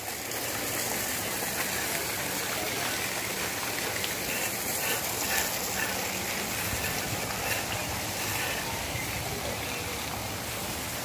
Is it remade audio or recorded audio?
recorded